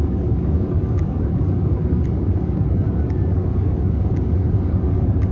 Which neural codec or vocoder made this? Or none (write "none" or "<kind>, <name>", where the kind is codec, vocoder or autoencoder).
codec, DAC